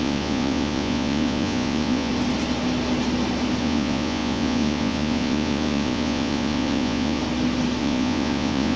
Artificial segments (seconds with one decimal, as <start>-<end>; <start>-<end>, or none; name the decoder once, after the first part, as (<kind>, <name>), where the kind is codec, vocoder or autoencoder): 0.0-2.1 (vocoder, Vocos); 3.6-7.2; 7.8-8.8